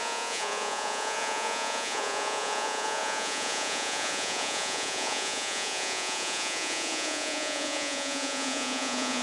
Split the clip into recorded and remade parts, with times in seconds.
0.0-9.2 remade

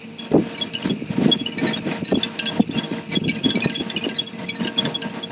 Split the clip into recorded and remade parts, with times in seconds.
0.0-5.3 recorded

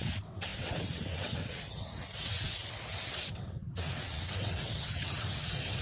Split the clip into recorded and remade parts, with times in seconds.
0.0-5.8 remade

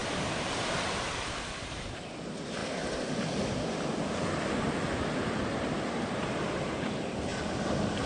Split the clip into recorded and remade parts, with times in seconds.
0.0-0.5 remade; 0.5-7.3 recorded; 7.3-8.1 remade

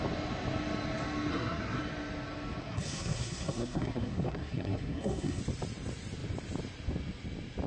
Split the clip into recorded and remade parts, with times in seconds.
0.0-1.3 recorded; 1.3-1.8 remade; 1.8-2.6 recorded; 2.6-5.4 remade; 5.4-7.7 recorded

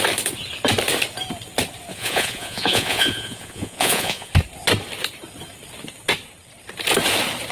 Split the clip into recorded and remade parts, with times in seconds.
0.0-1.9 recorded; 1.9-4.3 remade; 4.3-7.5 recorded